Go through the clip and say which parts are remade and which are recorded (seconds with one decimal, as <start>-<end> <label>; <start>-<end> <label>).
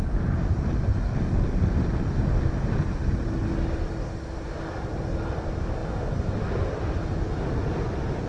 0.0-8.3 recorded